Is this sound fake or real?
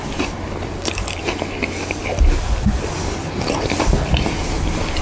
real